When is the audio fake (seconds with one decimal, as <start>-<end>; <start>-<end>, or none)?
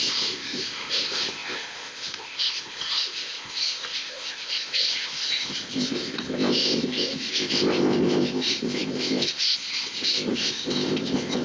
0.0-11.4